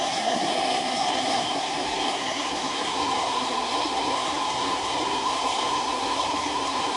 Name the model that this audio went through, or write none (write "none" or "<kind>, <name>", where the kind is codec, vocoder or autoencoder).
codec, SNAC